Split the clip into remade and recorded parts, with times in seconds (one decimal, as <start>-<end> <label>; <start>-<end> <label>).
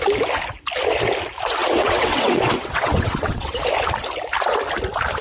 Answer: 0.0-1.6 recorded; 1.6-3.6 remade; 3.6-5.2 recorded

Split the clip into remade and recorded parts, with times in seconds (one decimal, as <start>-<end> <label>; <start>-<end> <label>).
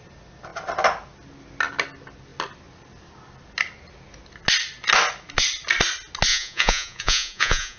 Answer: 0.0-6.3 recorded; 6.3-7.8 remade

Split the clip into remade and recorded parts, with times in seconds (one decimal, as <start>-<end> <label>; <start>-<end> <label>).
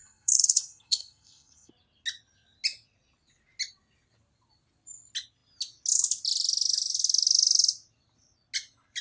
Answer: 0.0-1.7 remade; 1.7-9.0 recorded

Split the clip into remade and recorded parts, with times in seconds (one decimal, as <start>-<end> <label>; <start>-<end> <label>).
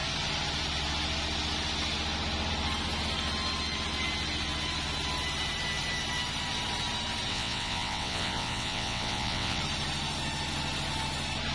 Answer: 0.0-7.3 recorded; 7.3-9.6 remade; 9.6-11.5 recorded